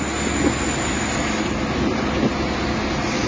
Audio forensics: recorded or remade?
recorded